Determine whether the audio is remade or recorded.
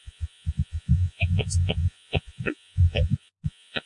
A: remade